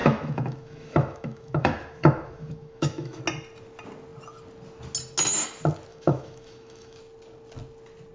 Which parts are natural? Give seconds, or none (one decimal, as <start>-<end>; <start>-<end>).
3.2-5.9; 7.0-8.1